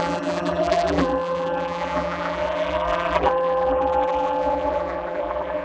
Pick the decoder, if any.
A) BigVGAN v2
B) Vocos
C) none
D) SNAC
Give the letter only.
A